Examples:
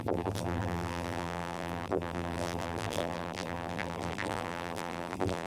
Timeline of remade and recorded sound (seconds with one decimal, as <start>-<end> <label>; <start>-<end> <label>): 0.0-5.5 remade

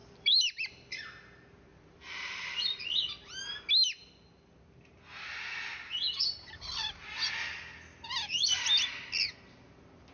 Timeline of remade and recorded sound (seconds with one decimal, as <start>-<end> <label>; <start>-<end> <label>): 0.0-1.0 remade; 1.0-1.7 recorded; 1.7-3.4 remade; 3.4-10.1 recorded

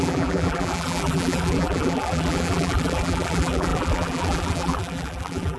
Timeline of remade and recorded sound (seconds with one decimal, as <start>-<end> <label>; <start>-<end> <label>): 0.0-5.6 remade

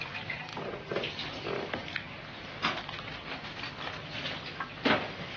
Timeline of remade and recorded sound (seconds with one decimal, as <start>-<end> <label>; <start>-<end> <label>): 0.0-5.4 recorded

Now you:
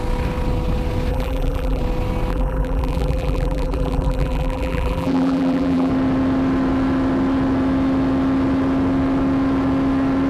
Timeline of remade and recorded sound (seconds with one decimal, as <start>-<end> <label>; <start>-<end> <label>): 0.0-1.1 recorded; 1.1-1.8 remade; 1.8-2.3 recorded; 2.3-5.9 remade; 5.9-10.3 recorded

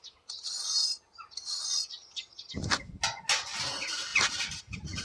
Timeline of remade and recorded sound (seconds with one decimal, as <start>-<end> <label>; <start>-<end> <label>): 0.0-5.0 recorded

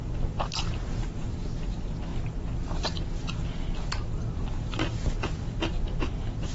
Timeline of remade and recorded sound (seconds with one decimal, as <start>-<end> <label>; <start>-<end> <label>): 0.0-6.5 recorded